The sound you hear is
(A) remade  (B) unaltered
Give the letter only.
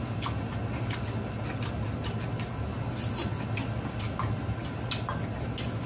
B